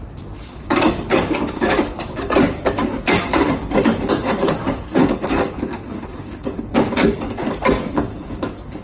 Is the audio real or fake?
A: fake